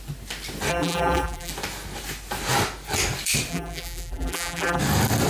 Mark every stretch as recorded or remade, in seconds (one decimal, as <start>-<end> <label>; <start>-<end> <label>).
0.0-0.7 recorded; 0.7-1.5 remade; 1.5-3.5 recorded; 3.5-4.8 remade; 4.8-5.3 recorded